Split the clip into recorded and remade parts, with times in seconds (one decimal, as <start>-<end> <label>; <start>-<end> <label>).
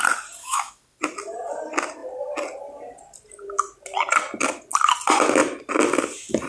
0.0-0.4 recorded; 0.4-1.0 remade; 1.0-6.5 recorded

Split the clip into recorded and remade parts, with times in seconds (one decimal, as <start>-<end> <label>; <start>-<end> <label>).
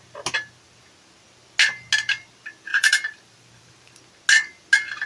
0.0-2.7 recorded; 2.7-4.0 remade; 4.0-5.1 recorded